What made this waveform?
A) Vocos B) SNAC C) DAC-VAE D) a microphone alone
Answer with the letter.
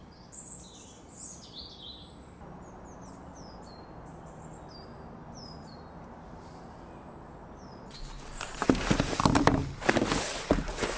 D